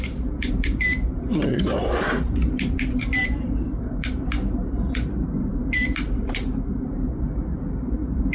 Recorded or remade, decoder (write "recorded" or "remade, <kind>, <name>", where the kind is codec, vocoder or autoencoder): remade, vocoder, BigVGAN v2